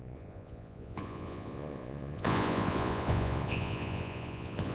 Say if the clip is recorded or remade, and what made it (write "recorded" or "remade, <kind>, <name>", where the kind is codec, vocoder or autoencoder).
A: remade, vocoder, Vocos